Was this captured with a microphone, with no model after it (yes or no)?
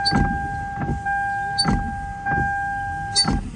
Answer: yes